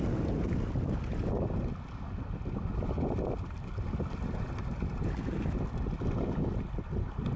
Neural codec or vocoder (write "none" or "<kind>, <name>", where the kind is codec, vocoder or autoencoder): none